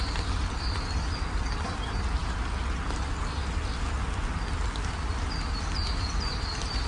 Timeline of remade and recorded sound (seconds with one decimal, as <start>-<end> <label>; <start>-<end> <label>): 0.0-6.9 recorded